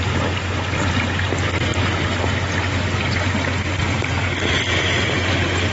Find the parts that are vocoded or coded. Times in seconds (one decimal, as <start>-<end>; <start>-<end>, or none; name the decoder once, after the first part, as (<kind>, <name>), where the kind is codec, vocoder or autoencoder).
none